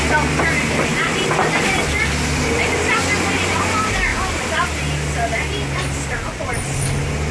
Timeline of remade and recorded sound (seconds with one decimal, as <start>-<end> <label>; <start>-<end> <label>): 0.0-7.3 recorded